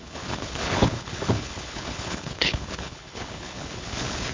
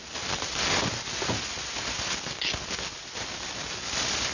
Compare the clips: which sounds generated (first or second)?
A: first